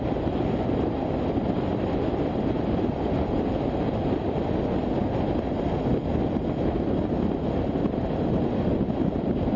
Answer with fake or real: real